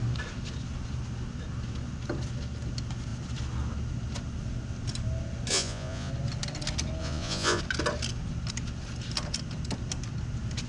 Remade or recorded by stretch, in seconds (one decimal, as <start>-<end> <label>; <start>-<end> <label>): 0.0-5.5 recorded; 5.5-6.1 remade; 6.1-7.0 recorded; 7.0-7.6 remade; 7.6-10.7 recorded